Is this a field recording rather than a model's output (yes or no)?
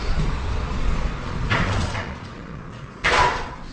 no